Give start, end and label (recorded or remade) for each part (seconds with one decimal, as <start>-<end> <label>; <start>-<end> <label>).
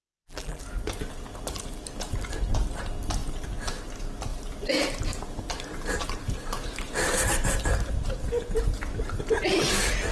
0.0-0.6 remade; 0.6-10.1 recorded